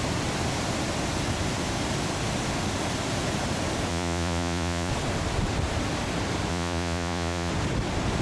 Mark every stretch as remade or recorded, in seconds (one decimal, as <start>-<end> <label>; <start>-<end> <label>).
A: 0.0-3.9 recorded; 3.9-4.9 remade; 4.9-6.5 recorded; 6.5-7.5 remade; 7.5-8.2 recorded

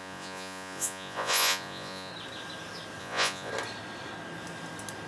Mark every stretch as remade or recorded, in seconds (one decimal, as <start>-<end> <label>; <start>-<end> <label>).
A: 0.0-2.1 remade; 2.1-3.0 recorded; 3.0-3.5 remade; 3.5-5.1 recorded